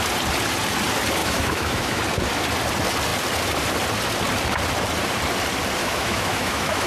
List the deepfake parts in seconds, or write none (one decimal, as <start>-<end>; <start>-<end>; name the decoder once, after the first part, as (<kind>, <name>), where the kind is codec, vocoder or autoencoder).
1.2-2.0 (autoencoder, DAC-VAE); 5.8-6.9